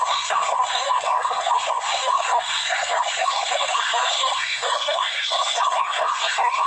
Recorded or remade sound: remade